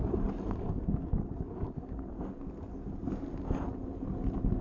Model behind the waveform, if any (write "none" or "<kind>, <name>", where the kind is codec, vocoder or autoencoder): none